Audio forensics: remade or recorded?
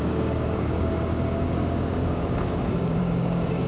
remade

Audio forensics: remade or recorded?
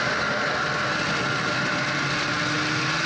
recorded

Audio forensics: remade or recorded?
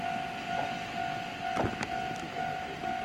recorded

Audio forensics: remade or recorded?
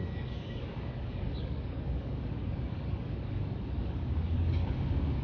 remade